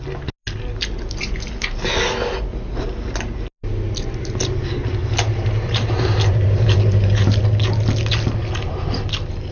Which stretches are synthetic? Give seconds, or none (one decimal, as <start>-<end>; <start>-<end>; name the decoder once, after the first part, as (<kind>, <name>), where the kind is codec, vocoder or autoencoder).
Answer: 5.0-7.4 (vocoder, BigVGAN v2)